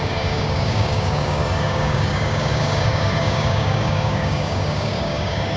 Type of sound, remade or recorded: remade